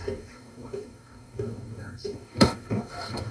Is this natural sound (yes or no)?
no